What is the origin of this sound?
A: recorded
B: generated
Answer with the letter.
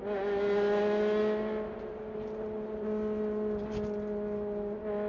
A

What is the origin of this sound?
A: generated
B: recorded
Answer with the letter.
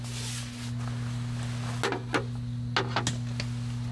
B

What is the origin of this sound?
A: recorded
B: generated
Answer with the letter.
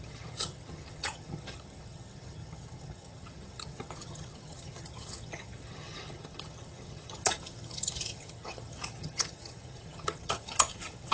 B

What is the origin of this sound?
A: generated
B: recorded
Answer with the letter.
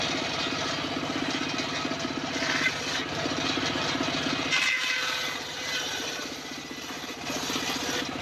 B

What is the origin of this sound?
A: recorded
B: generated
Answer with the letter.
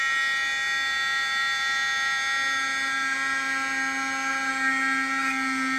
A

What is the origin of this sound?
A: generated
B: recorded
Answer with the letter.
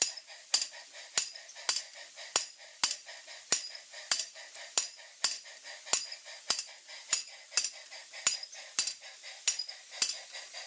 B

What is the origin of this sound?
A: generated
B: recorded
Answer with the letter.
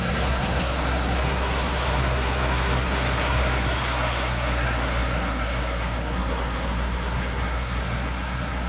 A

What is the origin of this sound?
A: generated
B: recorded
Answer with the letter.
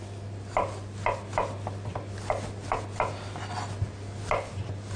B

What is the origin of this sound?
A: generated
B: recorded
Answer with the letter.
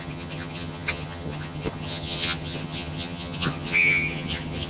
A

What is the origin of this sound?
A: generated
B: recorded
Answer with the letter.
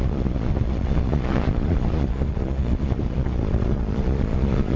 A